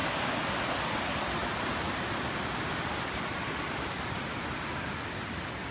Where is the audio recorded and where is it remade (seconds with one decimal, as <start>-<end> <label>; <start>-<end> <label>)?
0.0-5.7 recorded